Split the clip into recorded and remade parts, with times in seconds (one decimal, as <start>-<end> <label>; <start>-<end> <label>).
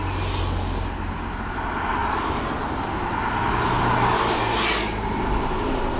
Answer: 0.0-6.0 recorded